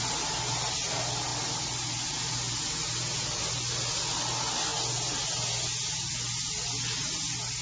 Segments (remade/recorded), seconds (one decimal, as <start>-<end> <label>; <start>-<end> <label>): 0.0-7.6 recorded